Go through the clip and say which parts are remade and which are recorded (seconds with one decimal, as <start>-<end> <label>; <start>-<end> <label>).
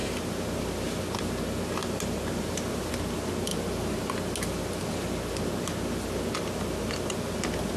0.0-0.6 remade; 0.6-1.8 recorded; 1.8-2.9 remade; 2.9-7.8 recorded